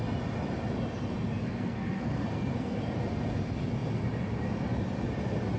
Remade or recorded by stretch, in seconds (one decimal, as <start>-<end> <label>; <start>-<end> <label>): 0.0-1.4 recorded; 1.4-2.8 remade; 2.8-5.6 recorded